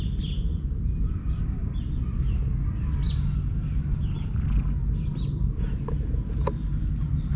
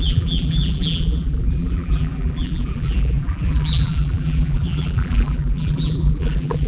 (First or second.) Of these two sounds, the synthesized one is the second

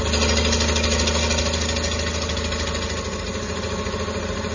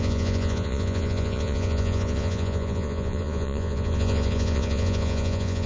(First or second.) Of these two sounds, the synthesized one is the second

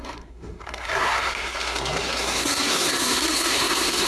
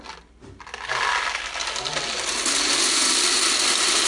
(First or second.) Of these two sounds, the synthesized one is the first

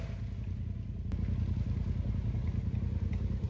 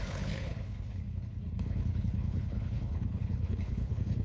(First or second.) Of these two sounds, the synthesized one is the second